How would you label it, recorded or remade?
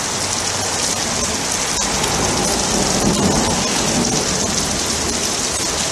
recorded